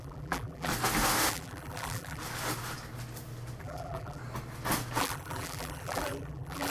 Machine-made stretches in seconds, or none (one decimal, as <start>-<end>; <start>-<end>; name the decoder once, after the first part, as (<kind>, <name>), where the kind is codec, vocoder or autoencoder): 0.0-0.7 (vocoder, BigVGAN v2); 1.3-2.2; 3.6-4.2; 5.0-6.7